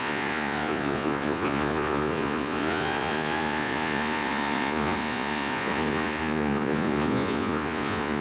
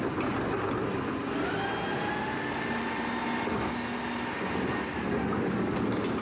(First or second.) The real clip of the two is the second